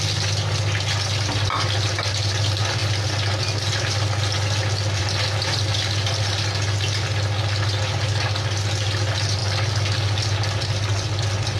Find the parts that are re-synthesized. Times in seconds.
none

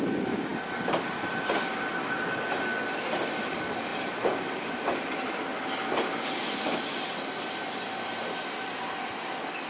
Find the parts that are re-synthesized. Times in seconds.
none